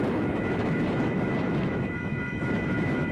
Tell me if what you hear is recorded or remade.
remade